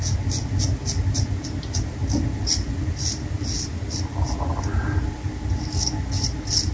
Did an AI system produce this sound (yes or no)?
no